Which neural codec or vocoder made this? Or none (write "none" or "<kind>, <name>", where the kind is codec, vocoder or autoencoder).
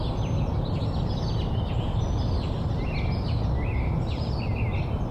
none